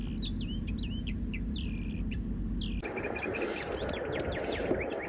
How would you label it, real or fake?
real